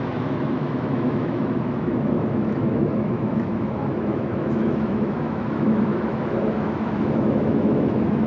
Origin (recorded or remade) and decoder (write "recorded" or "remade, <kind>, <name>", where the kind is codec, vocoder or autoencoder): remade, autoencoder, DAC-VAE